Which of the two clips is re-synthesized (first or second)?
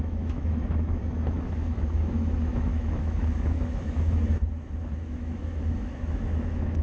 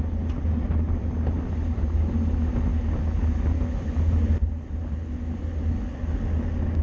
first